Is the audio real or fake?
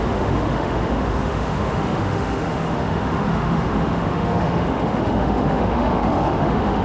fake